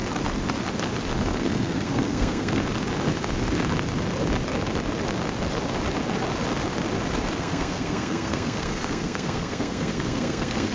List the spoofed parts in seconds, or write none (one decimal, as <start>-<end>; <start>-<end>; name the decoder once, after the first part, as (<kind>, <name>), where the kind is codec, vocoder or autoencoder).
1.2-2.6 (codec, SNAC); 7.4-10.7